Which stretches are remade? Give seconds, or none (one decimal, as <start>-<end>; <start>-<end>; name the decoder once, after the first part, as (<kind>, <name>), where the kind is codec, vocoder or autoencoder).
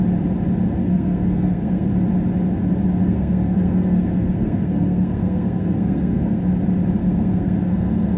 0.8-1.9 (codec, SNAC); 3.0-6.4; 7.0-8.2